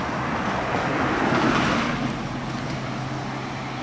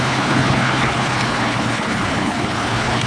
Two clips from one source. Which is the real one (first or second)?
first